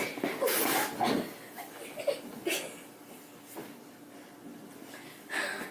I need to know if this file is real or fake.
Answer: real